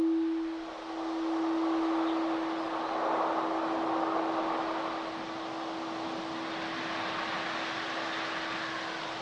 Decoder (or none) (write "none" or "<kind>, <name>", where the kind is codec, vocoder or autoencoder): none